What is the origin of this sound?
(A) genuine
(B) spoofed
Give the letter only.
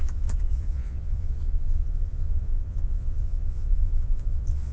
B